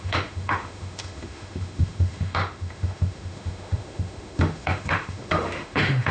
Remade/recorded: remade